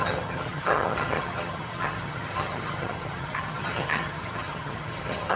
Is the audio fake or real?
fake